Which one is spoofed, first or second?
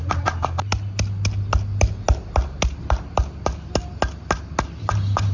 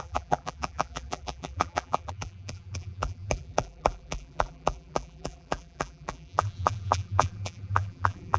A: second